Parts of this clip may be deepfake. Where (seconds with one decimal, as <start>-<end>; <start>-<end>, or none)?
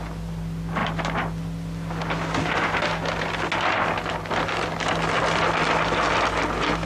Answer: none